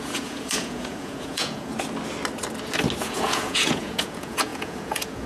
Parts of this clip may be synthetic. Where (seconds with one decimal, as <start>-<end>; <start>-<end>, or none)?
0.0-1.7; 3.0-5.3